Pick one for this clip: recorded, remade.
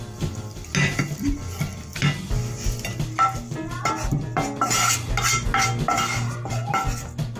recorded